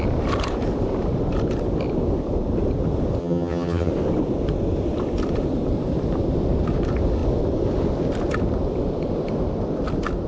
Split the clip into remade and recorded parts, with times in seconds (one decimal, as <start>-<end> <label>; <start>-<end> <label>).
0.0-3.2 recorded; 3.2-3.9 remade; 3.9-10.3 recorded